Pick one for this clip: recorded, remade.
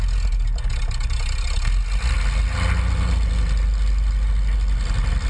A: recorded